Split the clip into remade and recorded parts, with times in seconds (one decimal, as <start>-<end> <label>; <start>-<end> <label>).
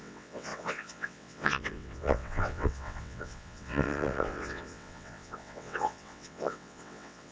0.0-7.3 remade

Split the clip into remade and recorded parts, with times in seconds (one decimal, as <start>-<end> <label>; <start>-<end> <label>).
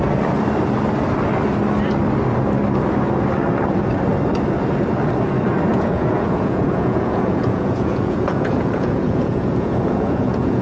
0.0-5.7 recorded; 5.7-10.6 remade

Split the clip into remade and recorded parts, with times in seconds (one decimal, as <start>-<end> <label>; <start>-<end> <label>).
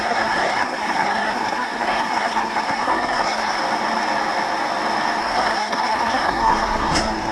0.0-3.6 remade; 3.6-5.2 recorded; 5.2-7.3 remade